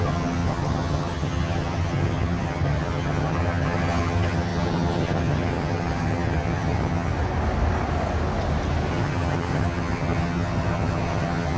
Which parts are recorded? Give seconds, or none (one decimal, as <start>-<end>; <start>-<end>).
7.1-8.9